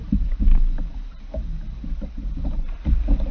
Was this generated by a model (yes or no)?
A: no